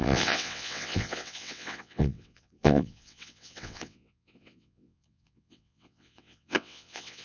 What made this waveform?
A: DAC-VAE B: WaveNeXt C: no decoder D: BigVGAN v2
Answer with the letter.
B